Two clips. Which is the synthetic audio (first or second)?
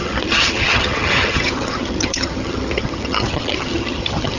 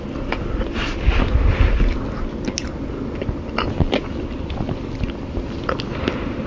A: first